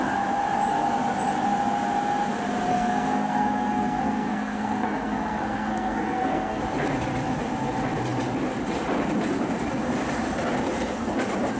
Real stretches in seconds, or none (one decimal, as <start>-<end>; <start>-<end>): 0.0-2.7; 6.6-11.6